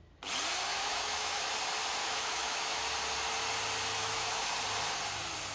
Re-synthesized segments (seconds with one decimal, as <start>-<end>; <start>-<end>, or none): 0.7-1.5; 2.0-2.8; 4.0-4.5